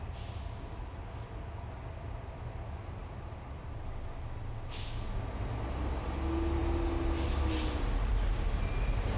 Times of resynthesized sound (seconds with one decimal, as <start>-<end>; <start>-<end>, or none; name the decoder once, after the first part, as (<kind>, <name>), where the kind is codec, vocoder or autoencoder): none